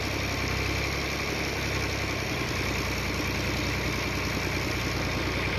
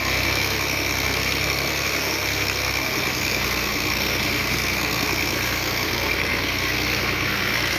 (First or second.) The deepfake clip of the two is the second